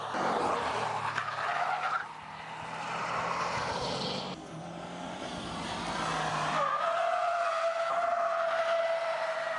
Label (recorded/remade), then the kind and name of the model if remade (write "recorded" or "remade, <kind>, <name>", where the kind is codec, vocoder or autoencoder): recorded